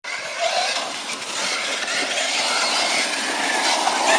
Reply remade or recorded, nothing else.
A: recorded